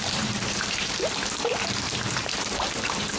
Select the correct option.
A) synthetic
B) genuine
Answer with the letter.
A